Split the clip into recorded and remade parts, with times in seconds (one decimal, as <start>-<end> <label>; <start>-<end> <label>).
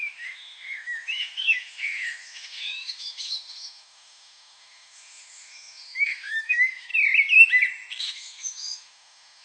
0.0-6.9 remade; 6.9-8.0 recorded; 8.0-9.4 remade